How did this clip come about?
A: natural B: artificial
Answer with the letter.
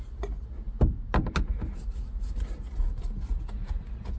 A